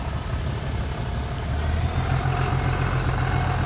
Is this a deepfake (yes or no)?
no